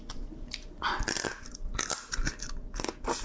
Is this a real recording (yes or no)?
yes